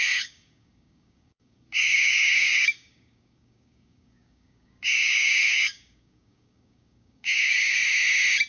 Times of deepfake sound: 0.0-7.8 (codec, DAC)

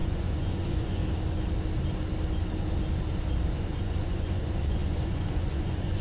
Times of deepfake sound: 0.0-1.0 (vocoder, Vocos); 3.5-6.0

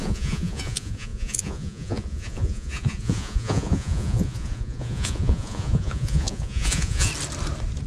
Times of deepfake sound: 0.0-7.1 (vocoder, Vocos)